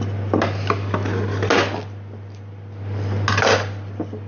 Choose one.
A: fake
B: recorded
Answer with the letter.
B